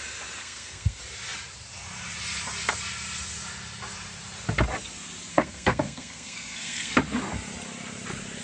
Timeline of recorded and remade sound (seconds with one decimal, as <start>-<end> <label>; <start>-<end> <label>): 0.0-0.4 recorded; 0.4-1.0 remade; 1.0-5.3 recorded; 5.3-6.9 remade; 6.9-8.4 recorded